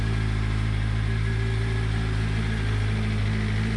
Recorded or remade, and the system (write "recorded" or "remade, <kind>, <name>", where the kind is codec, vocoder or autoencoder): recorded